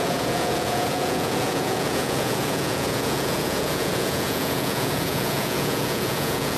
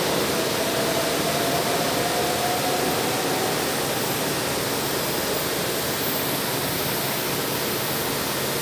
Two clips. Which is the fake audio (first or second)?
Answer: first